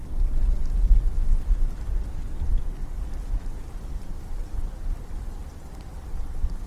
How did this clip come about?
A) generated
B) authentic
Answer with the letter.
B